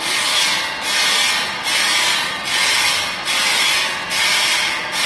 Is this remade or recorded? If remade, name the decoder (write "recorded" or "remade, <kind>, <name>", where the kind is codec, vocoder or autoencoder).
recorded